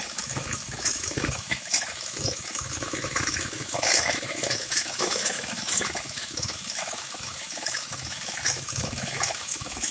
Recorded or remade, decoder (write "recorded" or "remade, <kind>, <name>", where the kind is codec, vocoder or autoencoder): remade, autoencoder, DAC-VAE